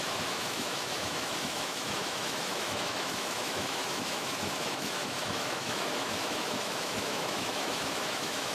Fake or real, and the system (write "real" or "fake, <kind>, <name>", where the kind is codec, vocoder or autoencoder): fake, autoencoder, DAC-VAE